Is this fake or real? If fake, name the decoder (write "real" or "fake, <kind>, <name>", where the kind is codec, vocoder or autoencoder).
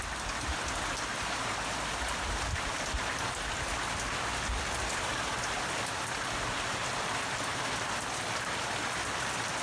real